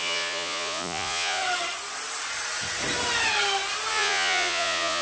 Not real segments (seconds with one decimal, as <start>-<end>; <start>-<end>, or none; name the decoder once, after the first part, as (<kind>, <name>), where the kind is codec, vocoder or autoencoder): 0.0-1.4 (vocoder, Vocos); 3.9-5.0